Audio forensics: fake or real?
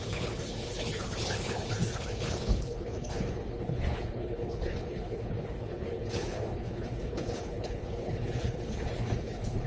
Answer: fake